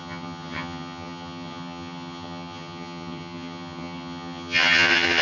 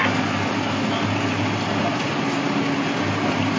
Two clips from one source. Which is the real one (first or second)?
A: second